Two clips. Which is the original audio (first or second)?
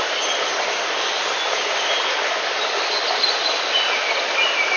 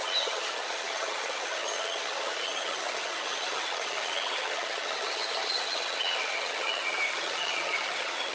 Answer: first